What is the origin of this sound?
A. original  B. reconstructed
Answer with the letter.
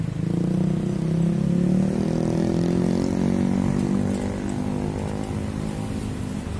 A